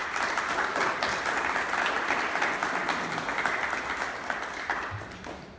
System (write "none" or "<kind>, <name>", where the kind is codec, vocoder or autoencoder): none